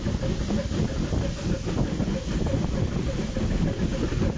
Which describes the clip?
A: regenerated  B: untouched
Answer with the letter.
B